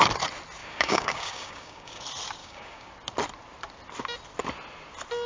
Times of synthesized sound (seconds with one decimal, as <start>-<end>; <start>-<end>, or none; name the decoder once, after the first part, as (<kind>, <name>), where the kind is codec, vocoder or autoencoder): 0.6-2.0 (codec, DAC); 2.4-2.9